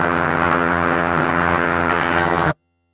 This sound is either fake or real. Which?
fake